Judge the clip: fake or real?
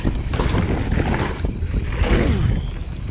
real